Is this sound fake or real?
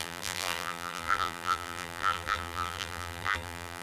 fake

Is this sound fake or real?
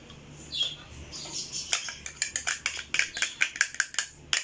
real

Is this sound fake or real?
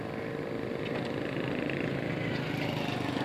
real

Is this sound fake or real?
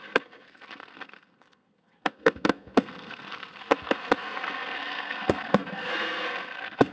fake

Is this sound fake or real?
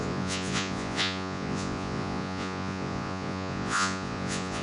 fake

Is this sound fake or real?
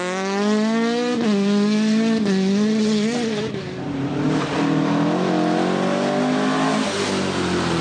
real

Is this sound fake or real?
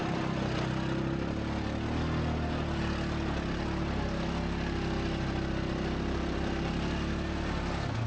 real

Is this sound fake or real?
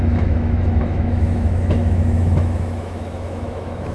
fake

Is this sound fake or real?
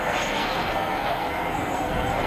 fake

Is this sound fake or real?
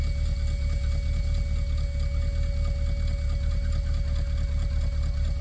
real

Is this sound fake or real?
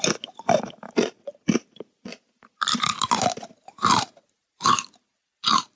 real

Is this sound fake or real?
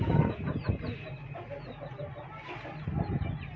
real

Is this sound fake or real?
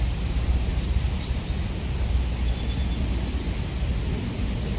real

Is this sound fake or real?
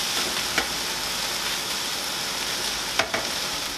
real